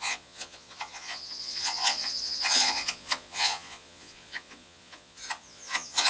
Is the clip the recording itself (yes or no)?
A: no